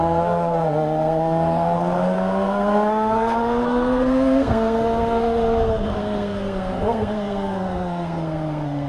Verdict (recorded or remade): remade